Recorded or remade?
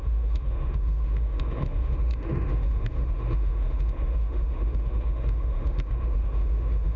remade